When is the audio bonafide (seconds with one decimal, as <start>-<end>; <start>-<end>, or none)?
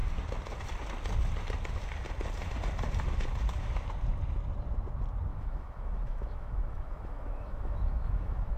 0.0-5.3